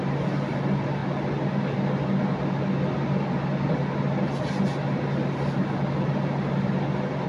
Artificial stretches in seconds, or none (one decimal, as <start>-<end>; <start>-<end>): none